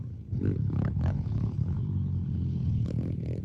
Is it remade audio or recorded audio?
remade